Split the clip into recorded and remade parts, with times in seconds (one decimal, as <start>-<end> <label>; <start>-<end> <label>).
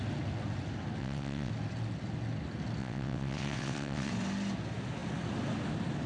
0.0-1.0 recorded; 1.0-1.5 remade; 1.5-2.8 recorded; 2.8-4.1 remade; 4.1-6.1 recorded